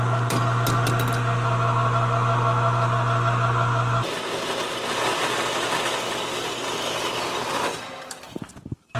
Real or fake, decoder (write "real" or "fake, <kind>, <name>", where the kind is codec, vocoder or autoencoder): real